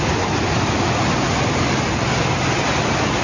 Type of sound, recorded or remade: recorded